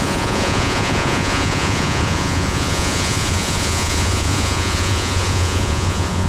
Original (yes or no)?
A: no